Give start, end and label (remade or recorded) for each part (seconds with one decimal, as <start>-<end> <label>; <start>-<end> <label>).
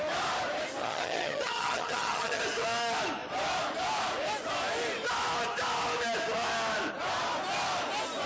0.0-0.8 recorded; 0.8-2.4 remade; 2.4-8.3 recorded